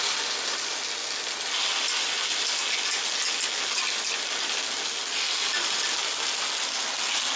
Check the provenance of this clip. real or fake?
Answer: real